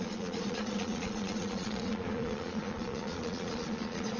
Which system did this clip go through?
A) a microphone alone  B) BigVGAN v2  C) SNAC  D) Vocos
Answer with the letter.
D